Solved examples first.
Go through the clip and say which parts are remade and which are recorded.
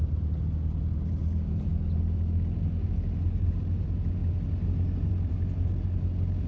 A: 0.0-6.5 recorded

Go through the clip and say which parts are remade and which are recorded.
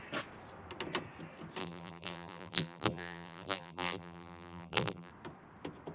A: 0.0-1.6 recorded; 1.6-5.1 remade; 5.1-5.9 recorded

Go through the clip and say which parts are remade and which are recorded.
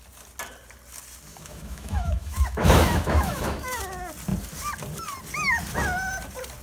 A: 0.0-1.3 recorded; 1.3-3.8 remade; 3.8-6.6 recorded